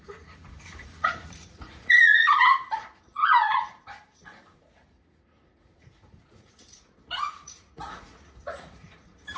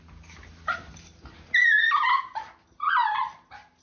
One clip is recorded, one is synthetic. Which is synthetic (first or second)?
first